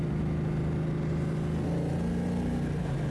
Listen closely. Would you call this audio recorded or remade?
recorded